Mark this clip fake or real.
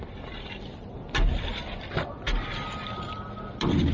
real